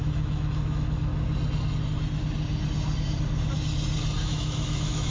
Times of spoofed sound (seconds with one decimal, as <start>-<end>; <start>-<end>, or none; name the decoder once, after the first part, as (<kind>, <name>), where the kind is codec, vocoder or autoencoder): 0.0-1.1 (autoencoder, DAC-VAE); 4.2-5.1